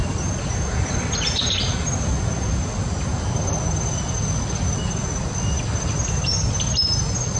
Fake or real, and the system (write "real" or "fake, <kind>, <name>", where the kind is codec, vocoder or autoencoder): real